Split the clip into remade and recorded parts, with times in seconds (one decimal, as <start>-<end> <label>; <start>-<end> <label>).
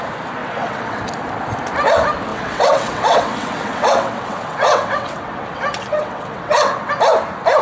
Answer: 0.0-0.4 recorded; 0.4-1.1 remade; 1.1-2.3 recorded; 2.3-6.9 remade; 6.9-7.6 recorded